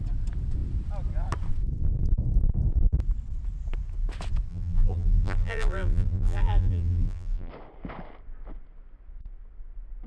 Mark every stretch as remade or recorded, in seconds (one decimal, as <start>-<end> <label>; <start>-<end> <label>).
0.0-4.5 recorded; 4.5-7.5 remade; 7.5-10.1 recorded